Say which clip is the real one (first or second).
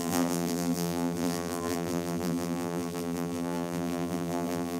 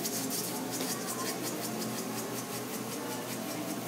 second